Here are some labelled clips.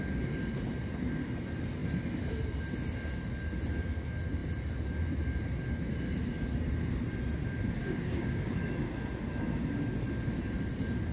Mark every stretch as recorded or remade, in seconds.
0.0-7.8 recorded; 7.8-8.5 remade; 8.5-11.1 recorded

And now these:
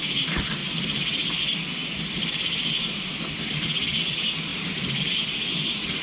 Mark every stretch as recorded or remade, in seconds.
0.0-0.6 recorded; 0.6-1.4 remade; 1.4-4.5 recorded; 4.5-5.0 remade; 5.0-6.0 recorded

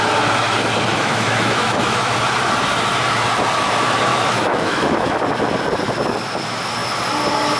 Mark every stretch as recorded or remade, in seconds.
0.0-0.9 recorded; 0.9-2.2 remade; 2.2-4.1 recorded; 4.1-5.2 remade; 5.2-7.6 recorded

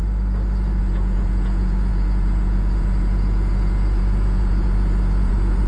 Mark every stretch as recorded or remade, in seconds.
0.0-0.8 recorded; 0.8-5.7 remade

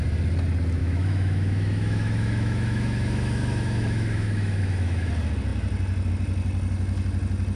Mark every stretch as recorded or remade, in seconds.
0.0-0.8 recorded; 0.8-5.1 remade; 5.1-7.6 recorded